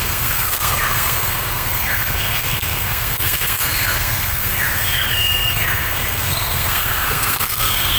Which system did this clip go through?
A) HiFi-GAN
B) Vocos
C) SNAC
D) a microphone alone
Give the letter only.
C